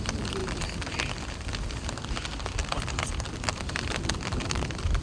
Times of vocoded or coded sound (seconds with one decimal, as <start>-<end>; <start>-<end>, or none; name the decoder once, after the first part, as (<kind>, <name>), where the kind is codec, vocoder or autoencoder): 2.6-5.0 (vocoder, BigVGAN v2)